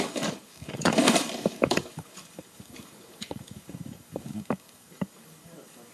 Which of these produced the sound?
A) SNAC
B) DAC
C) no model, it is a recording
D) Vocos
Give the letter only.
B